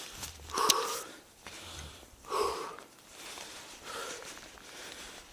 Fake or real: fake